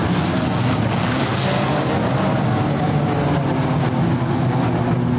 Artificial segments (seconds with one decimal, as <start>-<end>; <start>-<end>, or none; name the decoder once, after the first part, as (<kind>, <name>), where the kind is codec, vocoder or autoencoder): none